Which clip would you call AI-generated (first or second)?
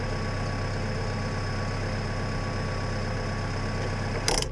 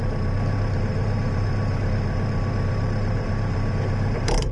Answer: second